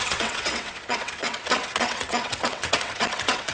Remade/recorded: remade